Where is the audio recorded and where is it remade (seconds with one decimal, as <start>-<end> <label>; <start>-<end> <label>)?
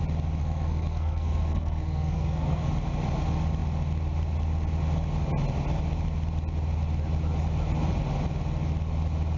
0.0-0.4 recorded; 0.4-2.7 remade; 2.7-9.4 recorded